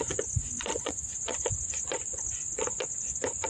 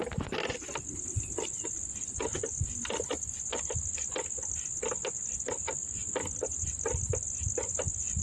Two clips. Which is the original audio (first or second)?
second